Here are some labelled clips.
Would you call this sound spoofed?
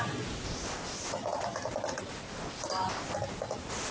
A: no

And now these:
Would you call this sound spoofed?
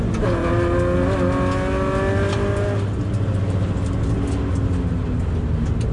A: no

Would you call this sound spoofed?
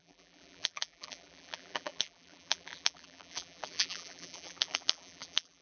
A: yes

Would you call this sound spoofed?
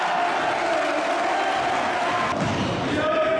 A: no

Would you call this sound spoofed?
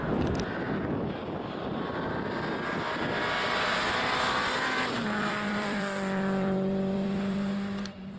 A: yes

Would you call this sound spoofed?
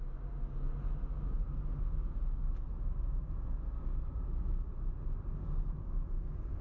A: no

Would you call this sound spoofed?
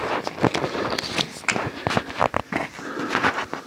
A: no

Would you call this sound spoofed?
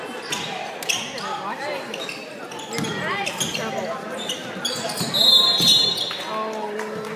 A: no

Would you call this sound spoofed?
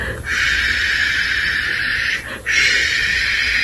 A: no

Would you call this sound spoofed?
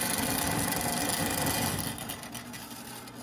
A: no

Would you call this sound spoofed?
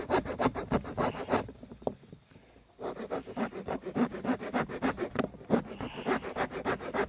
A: yes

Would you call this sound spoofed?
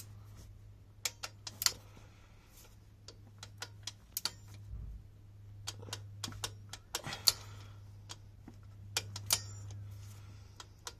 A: no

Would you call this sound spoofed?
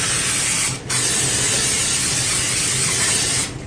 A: no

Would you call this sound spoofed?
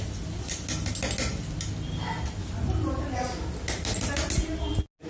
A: no